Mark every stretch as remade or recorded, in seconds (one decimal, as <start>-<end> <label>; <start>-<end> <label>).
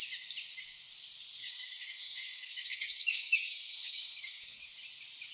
0.0-1.4 recorded; 1.4-4.6 remade; 4.6-5.3 recorded